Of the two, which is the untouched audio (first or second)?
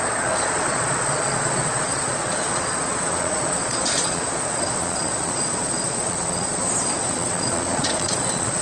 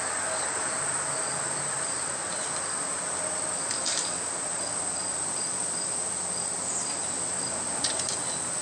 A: second